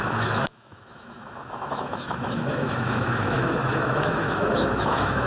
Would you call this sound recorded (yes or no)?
no